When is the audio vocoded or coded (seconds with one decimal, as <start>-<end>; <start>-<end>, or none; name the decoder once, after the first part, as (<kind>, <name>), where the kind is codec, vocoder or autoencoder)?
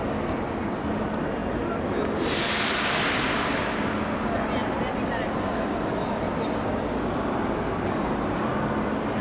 none